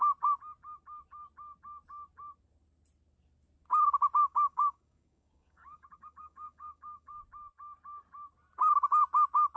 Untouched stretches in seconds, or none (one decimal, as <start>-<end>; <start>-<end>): 0.0-4.2; 7.2-9.6

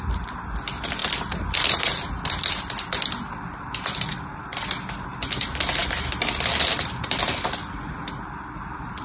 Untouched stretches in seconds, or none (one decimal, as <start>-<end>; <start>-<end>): 0.0-9.0